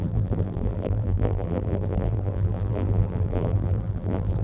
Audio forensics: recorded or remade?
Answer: remade